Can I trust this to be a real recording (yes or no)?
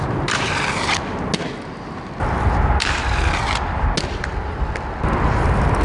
yes